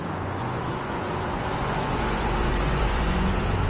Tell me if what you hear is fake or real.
fake